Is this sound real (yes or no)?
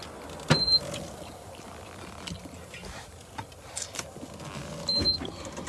yes